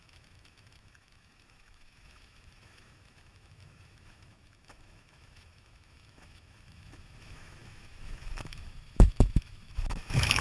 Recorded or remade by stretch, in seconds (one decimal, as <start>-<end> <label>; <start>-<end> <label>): 0.0-10.4 remade